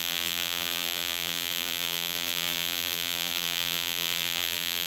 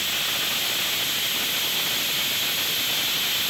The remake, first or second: first